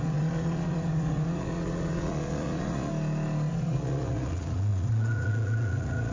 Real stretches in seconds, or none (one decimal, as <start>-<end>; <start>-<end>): 2.9-3.5